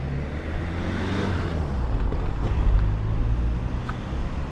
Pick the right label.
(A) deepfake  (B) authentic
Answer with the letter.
B